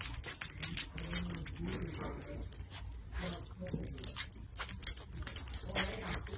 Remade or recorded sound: recorded